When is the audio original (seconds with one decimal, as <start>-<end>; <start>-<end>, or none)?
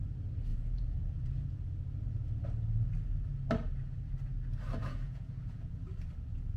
0.0-0.5; 1.5-4.8; 5.8-6.6